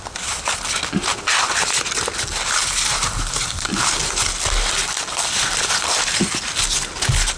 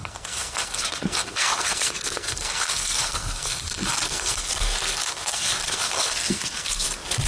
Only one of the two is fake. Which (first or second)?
second